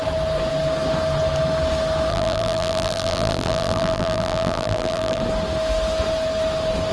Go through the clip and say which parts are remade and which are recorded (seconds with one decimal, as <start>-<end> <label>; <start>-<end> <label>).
0.0-2.1 recorded; 2.1-5.2 remade; 5.2-6.9 recorded